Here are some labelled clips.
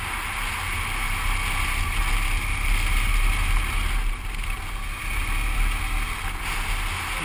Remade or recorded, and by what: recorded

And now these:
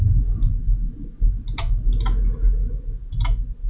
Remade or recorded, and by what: recorded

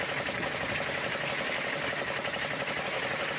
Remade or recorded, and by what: recorded